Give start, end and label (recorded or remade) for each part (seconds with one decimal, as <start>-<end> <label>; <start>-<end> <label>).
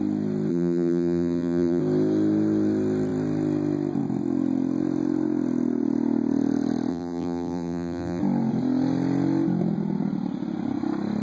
0.0-0.5 recorded; 0.5-1.8 remade; 1.8-6.9 recorded; 6.9-8.2 remade; 8.2-11.2 recorded